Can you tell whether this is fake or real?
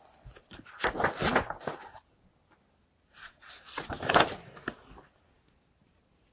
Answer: real